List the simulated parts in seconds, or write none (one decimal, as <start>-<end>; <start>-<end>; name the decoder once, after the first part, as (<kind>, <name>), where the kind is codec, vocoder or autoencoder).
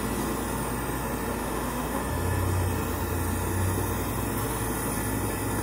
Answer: 1.4-2.0 (autoencoder, DAC-VAE)